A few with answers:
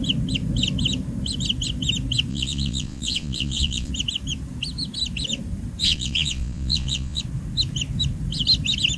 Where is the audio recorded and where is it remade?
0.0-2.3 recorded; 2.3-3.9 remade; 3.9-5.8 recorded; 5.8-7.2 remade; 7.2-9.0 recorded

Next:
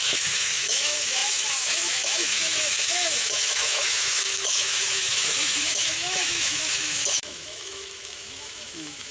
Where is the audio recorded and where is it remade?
0.0-9.1 remade

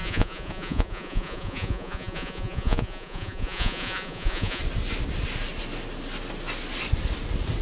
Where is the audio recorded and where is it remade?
0.0-4.6 remade; 4.6-7.6 recorded

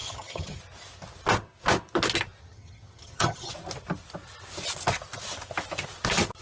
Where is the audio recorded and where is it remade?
0.0-0.6 remade; 0.6-2.4 recorded; 2.4-3.5 remade; 3.5-6.4 recorded

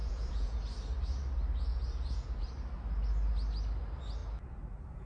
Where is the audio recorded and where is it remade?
0.0-0.6 remade; 0.6-1.7 recorded; 1.7-2.5 remade; 2.5-5.1 recorded

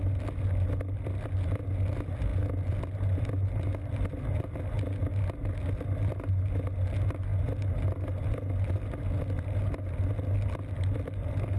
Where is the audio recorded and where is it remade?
0.0-11.6 recorded

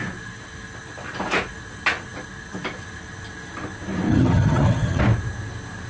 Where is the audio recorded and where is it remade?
0.0-4.1 recorded; 4.1-5.0 remade; 5.0-5.9 recorded

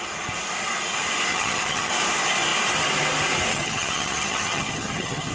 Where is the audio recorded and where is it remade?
0.0-1.3 recorded; 1.3-1.9 remade; 1.9-3.5 recorded; 3.5-5.3 remade